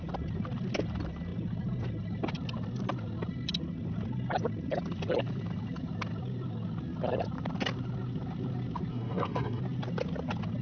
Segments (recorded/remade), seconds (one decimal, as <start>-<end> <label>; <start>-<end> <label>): 0.0-8.9 recorded; 8.9-9.6 remade; 9.6-10.6 recorded